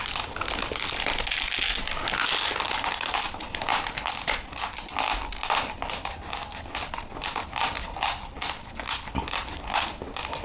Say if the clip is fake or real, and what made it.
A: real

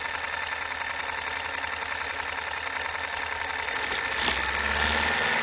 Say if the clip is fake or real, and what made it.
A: real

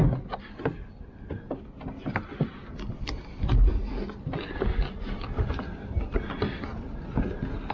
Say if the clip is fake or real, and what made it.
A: real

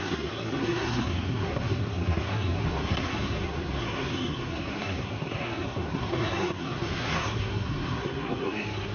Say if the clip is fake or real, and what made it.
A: fake, codec, SNAC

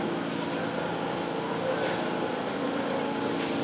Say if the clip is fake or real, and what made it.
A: real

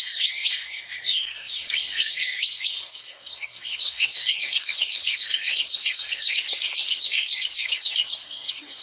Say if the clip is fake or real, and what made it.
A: fake, codec, SNAC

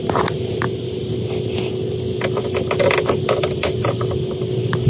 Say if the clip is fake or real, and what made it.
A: real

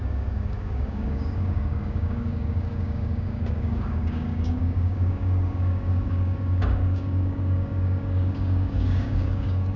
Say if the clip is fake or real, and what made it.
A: fake, codec, DAC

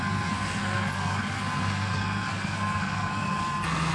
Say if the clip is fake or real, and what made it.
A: fake, codec, SNAC